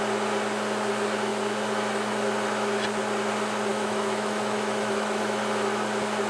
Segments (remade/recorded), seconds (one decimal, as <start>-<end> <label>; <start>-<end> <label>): 0.0-3.7 recorded; 3.7-5.2 remade; 5.2-6.3 recorded